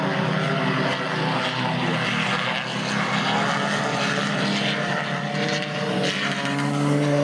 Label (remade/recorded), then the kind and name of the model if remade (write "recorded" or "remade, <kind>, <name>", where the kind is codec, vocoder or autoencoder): recorded